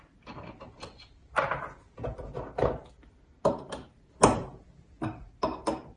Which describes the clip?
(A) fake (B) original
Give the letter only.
B